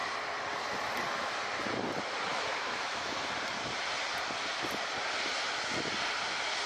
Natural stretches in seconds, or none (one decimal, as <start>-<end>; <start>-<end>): 0.0-2.3; 3.3-6.7